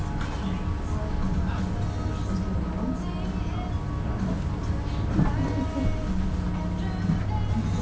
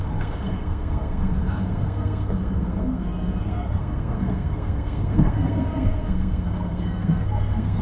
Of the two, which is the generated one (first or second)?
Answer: second